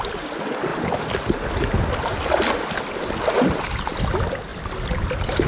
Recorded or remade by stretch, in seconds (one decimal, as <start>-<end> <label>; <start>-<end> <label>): 0.0-5.5 recorded